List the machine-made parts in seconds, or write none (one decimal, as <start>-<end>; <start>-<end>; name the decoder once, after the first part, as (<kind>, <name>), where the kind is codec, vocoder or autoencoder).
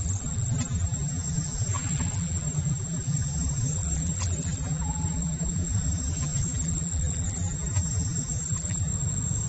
0.0-8.9 (vocoder, BigVGAN v2)